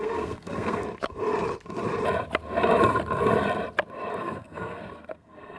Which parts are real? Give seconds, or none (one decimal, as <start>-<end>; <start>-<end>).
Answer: 0.8-4.2